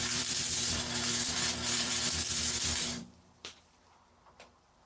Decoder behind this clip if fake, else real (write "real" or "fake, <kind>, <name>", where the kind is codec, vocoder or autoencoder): fake, vocoder, BigVGAN v2